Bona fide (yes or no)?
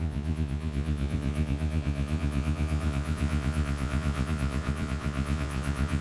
no